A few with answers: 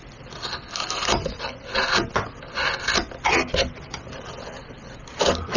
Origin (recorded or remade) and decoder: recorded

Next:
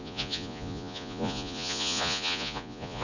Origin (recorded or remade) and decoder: remade, vocoder, Vocos